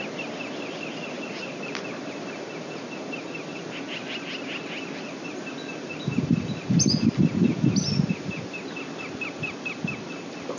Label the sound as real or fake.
real